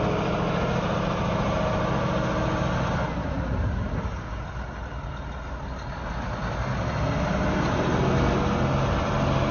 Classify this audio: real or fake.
real